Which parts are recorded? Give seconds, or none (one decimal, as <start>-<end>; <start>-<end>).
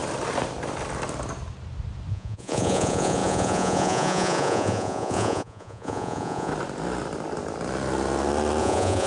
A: 0.0-2.1; 6.5-8.6